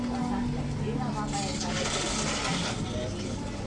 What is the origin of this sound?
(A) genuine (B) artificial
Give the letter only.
A